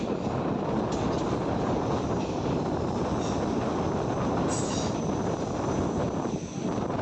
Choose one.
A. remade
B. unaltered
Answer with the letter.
B